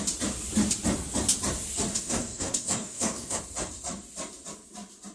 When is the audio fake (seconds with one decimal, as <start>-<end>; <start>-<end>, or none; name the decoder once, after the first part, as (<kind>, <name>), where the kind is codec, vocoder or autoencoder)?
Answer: 1.9-3.4 (codec, SNAC)